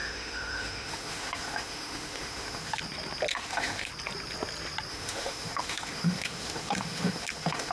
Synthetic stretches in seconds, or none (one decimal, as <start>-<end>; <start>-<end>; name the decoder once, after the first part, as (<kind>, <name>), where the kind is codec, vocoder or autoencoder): 0.0-2.8 (autoencoder, DAC-VAE); 3.3-3.9; 4.9-7.7